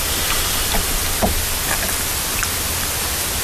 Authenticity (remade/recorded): recorded